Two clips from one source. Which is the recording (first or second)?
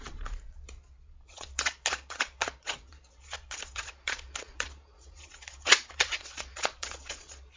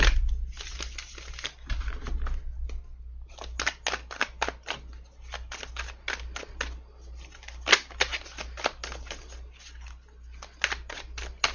second